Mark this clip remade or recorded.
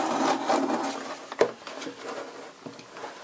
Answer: recorded